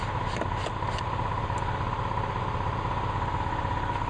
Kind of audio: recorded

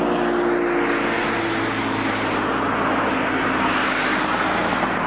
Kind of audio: recorded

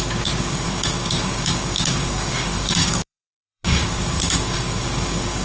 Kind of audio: remade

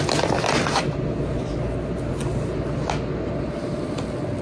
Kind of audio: recorded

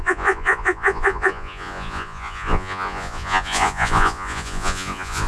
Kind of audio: remade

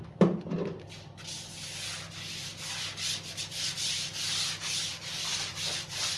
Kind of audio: recorded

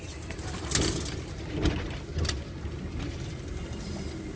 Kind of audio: recorded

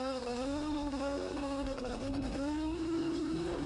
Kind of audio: remade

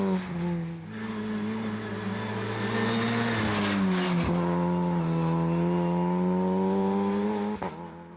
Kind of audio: recorded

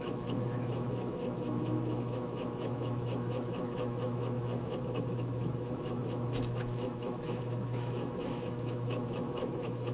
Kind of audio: remade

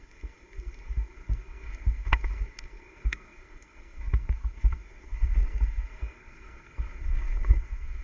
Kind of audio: remade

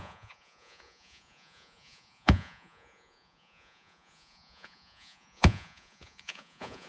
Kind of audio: remade